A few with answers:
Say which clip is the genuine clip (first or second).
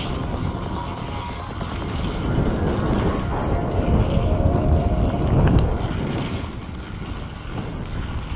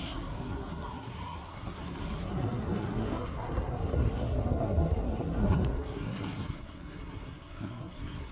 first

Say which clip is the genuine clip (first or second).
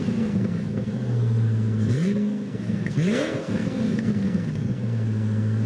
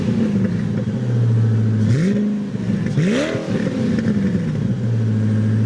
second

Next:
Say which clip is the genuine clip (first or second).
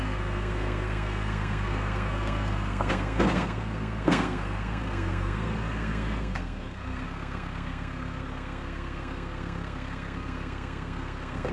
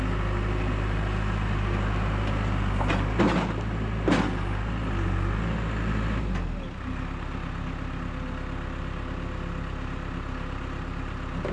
second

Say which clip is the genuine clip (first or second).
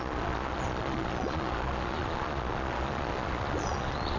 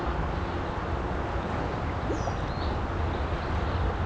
second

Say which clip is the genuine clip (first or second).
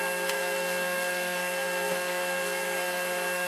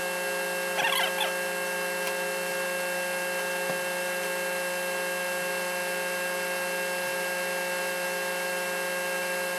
second